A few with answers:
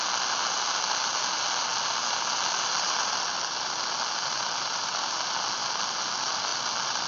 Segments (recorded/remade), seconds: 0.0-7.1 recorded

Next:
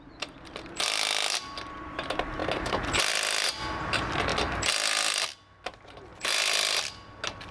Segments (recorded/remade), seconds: 0.0-7.5 recorded

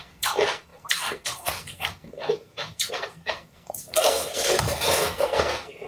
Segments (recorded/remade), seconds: 0.0-5.9 remade

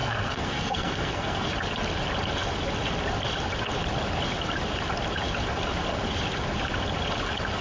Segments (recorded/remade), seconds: 0.0-1.5 remade; 1.5-7.6 recorded

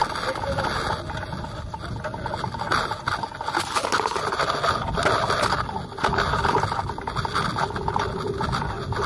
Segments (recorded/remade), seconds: 0.0-9.1 recorded

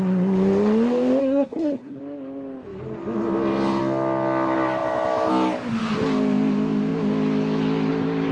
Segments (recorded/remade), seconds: 0.0-1.2 recorded; 1.2-2.0 remade; 2.0-8.3 recorded